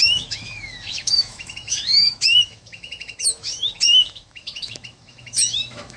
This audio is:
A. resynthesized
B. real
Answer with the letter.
A